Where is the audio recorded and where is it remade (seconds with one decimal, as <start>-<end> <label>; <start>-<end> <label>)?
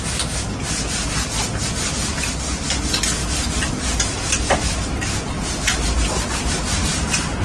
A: 0.0-7.4 recorded